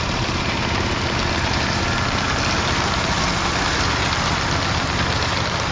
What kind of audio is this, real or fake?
real